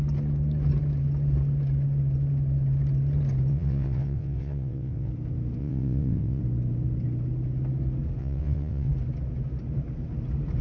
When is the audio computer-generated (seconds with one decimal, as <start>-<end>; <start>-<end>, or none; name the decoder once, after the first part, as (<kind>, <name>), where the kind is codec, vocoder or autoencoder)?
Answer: 3.5-5.1 (vocoder, WaveNeXt); 5.6-6.4; 8.2-8.9